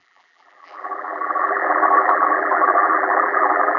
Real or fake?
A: fake